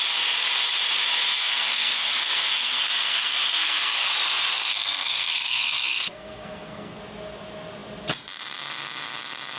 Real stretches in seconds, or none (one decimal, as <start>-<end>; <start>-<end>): 0.0-1.3; 4.1-4.7; 7.0-9.6